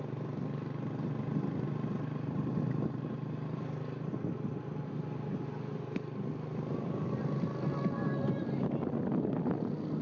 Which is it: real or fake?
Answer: real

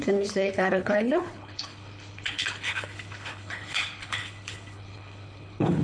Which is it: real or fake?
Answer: fake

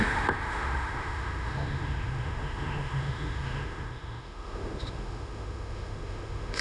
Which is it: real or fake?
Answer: fake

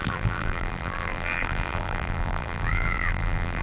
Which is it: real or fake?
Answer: fake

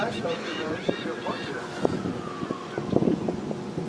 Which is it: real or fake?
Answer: fake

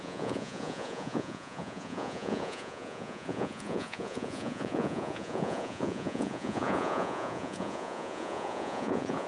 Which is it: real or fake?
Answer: fake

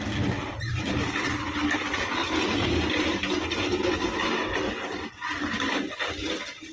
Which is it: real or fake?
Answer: real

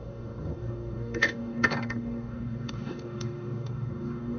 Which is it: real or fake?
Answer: fake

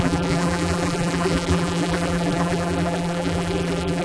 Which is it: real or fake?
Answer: fake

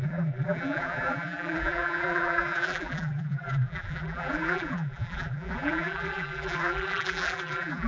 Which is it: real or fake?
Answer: fake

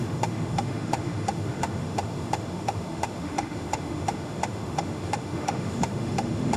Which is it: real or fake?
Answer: fake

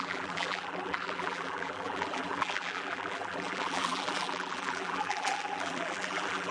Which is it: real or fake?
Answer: fake